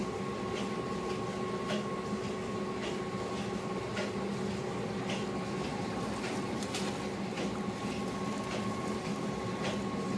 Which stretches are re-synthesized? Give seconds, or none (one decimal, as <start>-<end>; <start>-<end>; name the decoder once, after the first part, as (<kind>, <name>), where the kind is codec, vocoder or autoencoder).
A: none